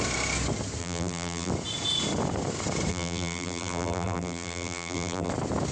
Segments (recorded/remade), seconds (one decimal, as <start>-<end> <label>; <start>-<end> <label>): 0.0-0.8 recorded; 0.8-1.5 remade; 1.5-2.9 recorded; 2.9-5.3 remade; 5.3-5.7 recorded